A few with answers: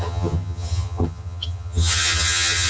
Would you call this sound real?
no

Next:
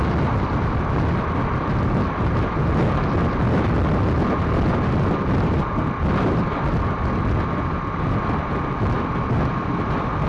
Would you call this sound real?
yes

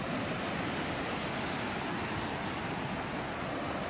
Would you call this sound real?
yes